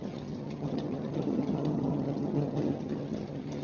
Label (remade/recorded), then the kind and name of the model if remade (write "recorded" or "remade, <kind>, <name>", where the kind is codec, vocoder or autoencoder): remade, vocoder, HiFi-GAN